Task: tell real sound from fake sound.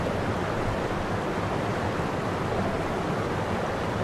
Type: real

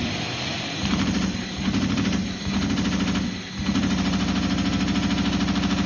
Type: real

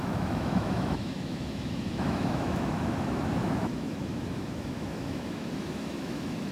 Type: fake